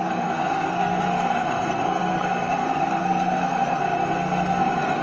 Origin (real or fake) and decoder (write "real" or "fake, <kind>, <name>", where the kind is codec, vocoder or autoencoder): fake, codec, SNAC